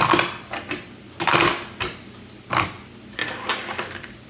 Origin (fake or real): real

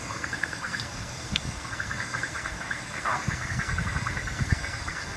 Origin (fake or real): fake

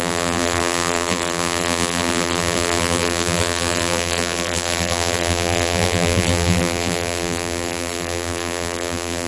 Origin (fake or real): fake